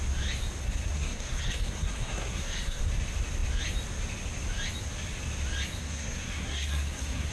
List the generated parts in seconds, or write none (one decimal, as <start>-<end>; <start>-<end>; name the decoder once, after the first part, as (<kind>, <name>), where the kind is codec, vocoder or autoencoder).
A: 0.6-2.8 (codec, SNAC); 5.8-7.3

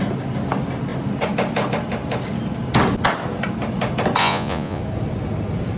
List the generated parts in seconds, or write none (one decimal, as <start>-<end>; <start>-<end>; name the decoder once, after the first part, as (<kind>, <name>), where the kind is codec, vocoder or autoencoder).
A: 4.2-4.8 (vocoder, Vocos)